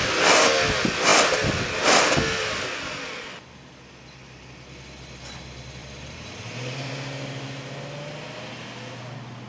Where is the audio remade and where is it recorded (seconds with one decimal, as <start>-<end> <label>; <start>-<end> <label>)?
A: 0.0-5.8 recorded; 5.8-6.9 remade; 6.9-9.5 recorded